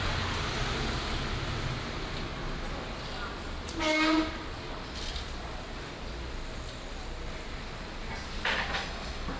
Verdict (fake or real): real